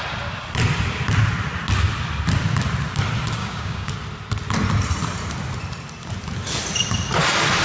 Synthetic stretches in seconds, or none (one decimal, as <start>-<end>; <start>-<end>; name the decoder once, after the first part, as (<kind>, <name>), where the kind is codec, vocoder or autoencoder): 3.4-3.9 (codec, DAC)